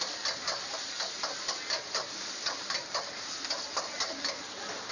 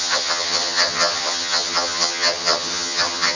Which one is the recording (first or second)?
first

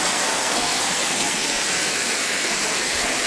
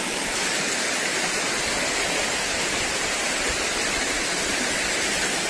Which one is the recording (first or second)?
second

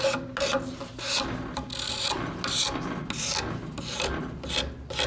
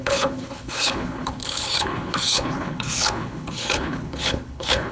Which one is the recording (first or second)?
first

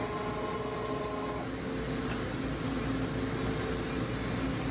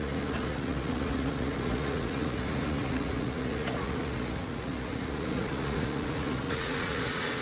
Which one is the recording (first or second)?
first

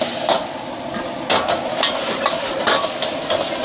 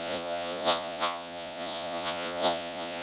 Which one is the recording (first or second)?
first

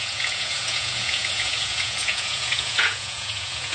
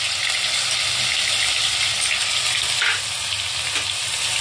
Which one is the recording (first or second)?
second